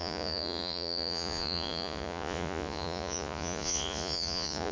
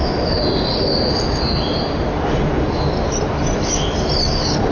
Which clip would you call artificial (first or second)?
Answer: first